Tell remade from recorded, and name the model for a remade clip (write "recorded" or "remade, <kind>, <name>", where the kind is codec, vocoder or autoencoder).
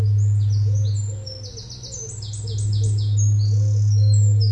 recorded